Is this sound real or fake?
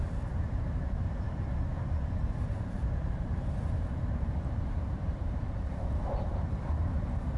fake